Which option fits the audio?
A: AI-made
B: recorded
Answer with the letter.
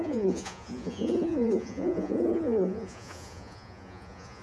A